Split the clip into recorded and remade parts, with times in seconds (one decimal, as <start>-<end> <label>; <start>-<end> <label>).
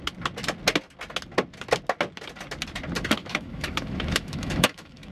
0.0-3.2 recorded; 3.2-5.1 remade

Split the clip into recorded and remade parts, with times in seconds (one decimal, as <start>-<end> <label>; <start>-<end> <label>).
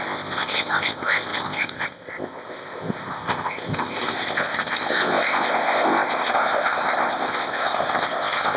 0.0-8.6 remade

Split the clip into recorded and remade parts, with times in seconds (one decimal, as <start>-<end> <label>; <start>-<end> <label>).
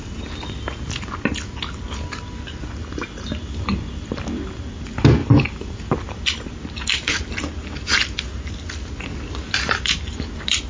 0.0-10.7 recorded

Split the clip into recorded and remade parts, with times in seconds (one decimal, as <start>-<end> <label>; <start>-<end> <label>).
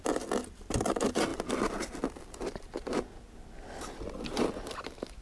0.0-5.2 recorded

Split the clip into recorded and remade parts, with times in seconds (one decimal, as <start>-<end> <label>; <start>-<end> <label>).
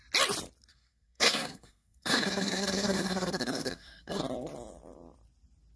0.0-0.7 recorded; 0.7-4.2 remade; 4.2-5.8 recorded